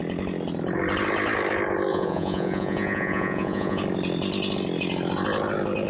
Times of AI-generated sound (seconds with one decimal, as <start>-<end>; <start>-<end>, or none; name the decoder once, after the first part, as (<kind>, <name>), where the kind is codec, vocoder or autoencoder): 1.9-3.8 (vocoder, Vocos)